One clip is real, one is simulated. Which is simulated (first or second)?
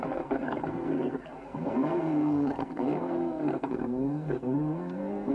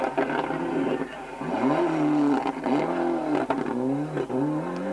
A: first